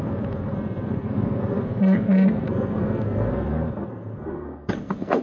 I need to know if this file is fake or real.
fake